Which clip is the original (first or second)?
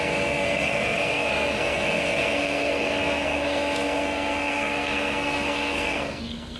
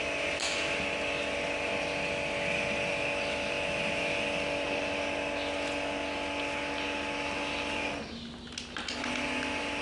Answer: second